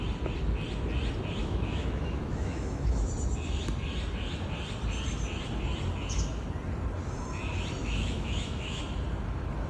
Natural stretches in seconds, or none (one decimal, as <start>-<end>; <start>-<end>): 0.0-1.4; 3.1-7.8; 8.8-9.7